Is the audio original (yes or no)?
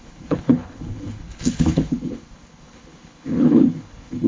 no